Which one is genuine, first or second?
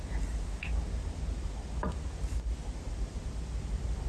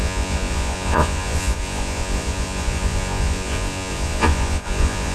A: first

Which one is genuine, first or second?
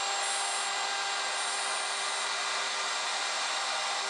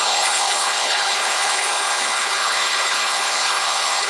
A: first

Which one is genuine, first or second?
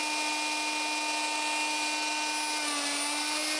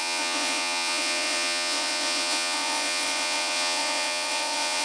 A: first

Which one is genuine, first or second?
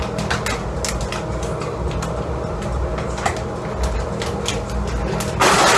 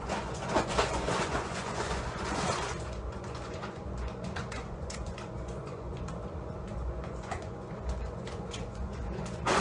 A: first